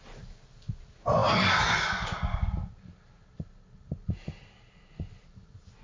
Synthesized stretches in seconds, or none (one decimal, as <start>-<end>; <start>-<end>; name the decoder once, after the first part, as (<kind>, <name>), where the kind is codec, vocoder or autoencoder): none